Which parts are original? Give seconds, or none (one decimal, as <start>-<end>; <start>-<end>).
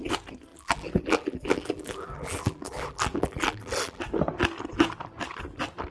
0.0-0.5; 4.0-5.9